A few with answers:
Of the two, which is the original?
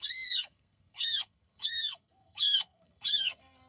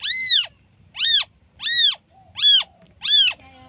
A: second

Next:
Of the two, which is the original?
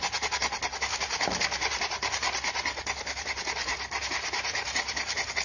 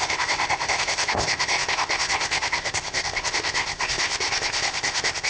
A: first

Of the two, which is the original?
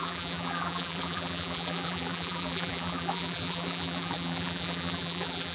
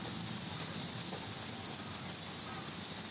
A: second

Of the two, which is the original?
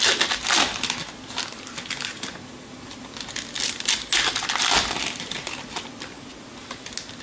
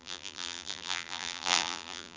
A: first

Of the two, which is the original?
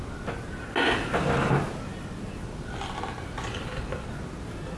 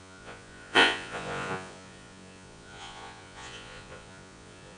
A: first